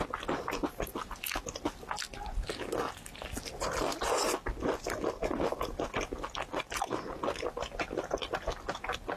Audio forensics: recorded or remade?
recorded